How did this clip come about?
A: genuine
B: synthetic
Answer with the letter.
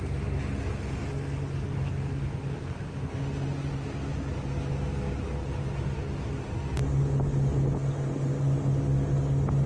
A